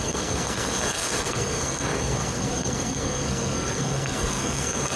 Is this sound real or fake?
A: fake